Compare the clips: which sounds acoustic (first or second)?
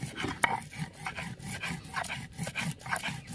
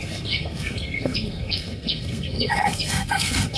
first